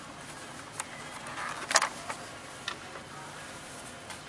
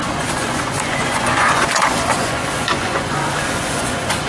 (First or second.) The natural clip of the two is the first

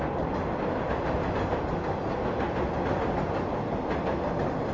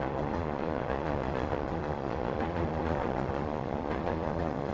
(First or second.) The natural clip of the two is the first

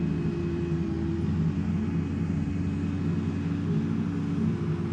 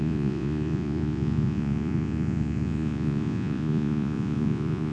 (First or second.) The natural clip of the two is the first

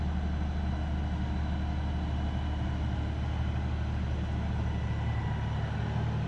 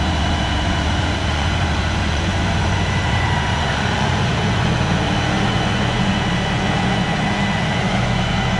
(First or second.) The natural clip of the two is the first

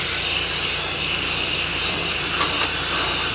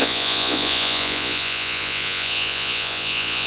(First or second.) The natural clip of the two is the first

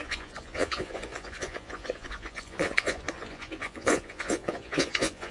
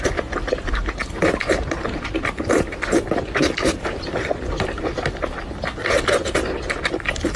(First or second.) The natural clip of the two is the second